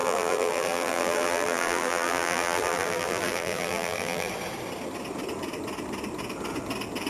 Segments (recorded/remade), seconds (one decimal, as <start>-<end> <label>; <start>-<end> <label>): 0.0-4.3 remade; 4.3-7.1 recorded